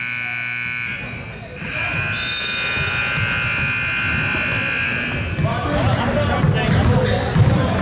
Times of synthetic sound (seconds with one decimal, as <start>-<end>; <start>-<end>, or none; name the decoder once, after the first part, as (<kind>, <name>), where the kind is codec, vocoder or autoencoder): none